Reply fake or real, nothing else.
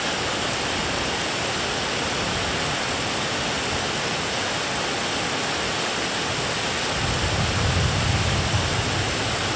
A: real